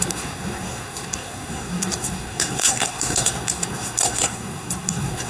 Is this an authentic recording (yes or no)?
no